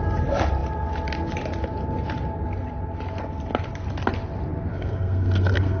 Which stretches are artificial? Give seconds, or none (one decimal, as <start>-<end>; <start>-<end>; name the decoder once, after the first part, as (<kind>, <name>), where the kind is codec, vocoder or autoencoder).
4.7-5.8 (codec, SNAC)